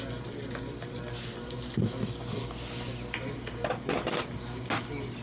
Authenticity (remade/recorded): recorded